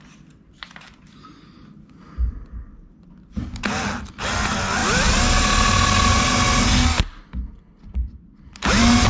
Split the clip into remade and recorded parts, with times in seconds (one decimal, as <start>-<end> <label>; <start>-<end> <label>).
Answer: 0.0-9.1 recorded